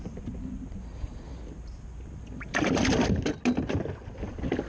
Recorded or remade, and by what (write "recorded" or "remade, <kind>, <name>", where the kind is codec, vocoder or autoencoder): recorded